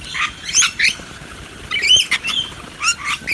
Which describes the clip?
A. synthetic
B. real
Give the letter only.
A